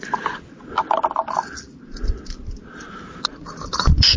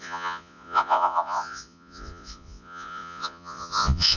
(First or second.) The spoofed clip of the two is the second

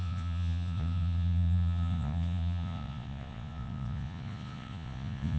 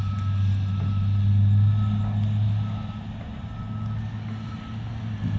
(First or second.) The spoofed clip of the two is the first